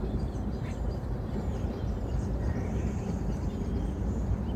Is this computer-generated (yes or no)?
no